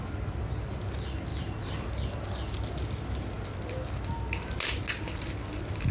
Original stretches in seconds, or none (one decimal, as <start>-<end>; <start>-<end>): 0.0-5.9